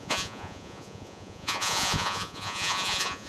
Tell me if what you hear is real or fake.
fake